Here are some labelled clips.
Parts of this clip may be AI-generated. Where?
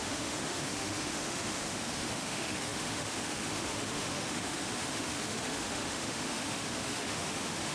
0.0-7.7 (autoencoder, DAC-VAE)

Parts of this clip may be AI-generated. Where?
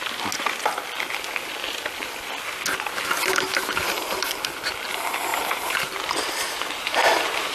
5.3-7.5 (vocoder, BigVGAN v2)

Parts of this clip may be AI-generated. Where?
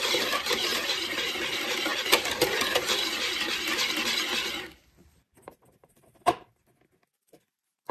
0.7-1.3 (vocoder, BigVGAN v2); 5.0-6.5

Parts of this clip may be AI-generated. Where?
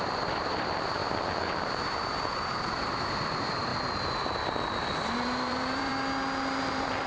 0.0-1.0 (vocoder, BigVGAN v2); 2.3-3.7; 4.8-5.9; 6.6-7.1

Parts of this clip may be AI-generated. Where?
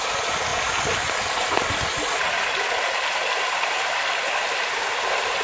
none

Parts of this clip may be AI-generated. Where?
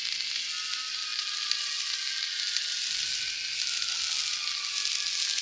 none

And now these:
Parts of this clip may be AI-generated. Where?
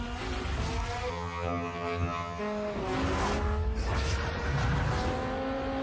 1.1-2.4 (vocoder, HiFi-GAN)